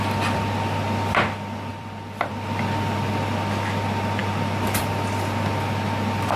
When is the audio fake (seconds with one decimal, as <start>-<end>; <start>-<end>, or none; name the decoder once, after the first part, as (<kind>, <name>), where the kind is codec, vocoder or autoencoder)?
1.7-2.3 (vocoder, BigVGAN v2); 4.2-4.8